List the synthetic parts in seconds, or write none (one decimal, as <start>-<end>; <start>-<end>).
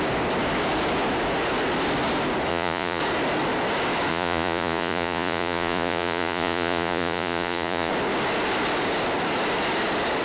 2.5-3.0; 4.1-7.9